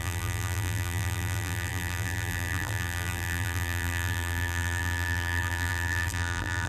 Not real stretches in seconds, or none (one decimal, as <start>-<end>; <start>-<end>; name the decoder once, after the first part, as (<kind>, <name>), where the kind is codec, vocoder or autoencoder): 0.0-6.7 (vocoder, BigVGAN v2)